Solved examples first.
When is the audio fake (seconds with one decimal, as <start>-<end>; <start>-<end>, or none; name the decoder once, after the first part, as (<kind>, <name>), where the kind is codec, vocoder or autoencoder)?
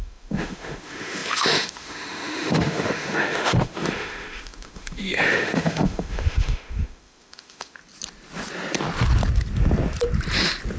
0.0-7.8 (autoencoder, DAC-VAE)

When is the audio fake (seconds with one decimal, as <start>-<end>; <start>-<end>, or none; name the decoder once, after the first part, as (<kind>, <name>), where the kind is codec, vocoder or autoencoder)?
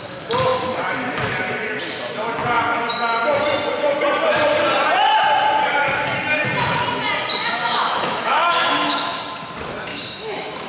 7.6-9.2 (autoencoder, DAC-VAE); 9.9-10.7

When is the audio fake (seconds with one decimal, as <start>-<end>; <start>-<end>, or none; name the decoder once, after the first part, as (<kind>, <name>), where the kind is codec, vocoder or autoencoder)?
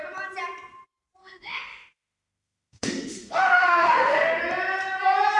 1.2-4.4 (autoencoder, DAC-VAE)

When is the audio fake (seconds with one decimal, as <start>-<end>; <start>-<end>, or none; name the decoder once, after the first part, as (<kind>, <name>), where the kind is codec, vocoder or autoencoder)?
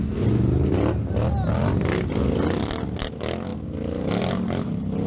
none